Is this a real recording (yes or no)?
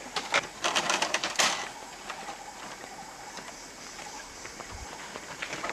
yes